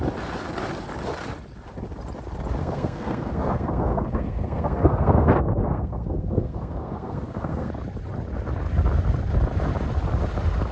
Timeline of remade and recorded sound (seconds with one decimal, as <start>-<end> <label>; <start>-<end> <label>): 0.0-2.6 recorded; 2.6-7.7 remade; 7.7-10.7 recorded